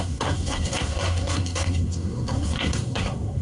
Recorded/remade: remade